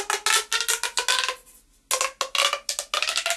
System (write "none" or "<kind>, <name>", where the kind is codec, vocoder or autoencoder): none